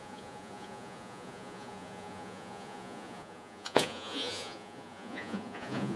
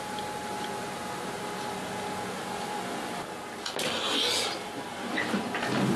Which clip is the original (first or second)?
second